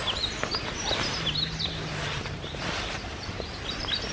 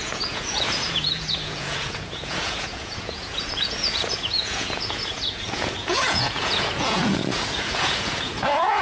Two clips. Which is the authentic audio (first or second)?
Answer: first